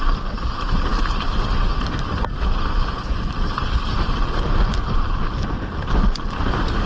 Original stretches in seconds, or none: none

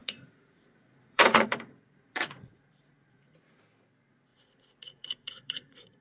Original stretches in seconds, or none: 3.6-4.3

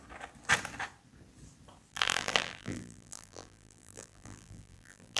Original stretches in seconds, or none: 0.0-1.9